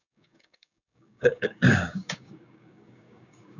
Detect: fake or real fake